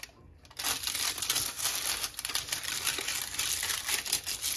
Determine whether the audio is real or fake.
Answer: real